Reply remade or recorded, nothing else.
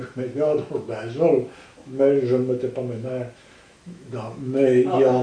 remade